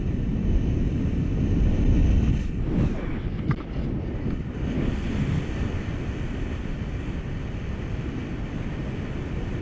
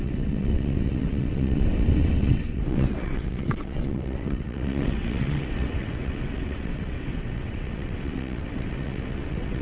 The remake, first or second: second